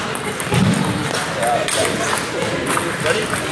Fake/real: real